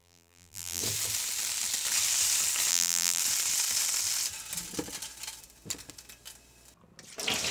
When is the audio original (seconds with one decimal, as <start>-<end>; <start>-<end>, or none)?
0.8-2.7; 3.2-7.5